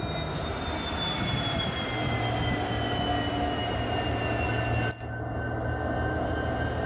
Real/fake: real